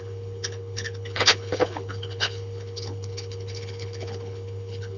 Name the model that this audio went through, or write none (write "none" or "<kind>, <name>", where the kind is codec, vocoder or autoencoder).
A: codec, HILCodec